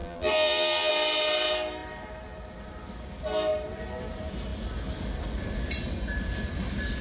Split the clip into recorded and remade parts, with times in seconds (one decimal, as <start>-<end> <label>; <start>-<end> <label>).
0.0-0.9 remade; 0.9-7.0 recorded